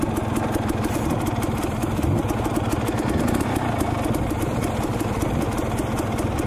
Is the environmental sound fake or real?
real